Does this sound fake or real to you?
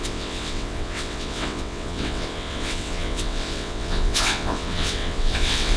fake